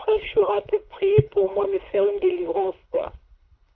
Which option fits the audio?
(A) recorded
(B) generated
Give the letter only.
B